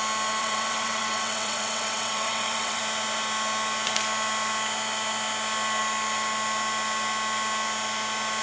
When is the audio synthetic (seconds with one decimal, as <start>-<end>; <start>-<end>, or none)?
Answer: 0.4-2.8